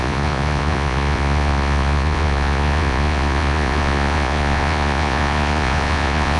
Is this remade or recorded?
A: remade